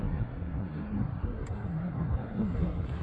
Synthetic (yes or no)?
yes